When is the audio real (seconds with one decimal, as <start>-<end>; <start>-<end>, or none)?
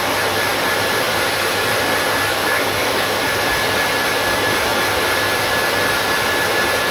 0.0-2.3; 3.2-6.9